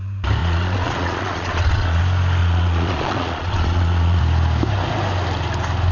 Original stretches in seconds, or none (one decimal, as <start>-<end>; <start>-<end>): 0.0-0.4; 2.0-2.4; 4.2-5.9